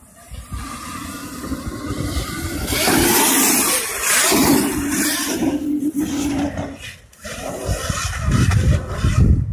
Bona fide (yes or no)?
yes